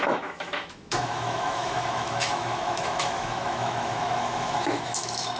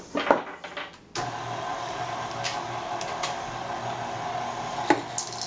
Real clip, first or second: second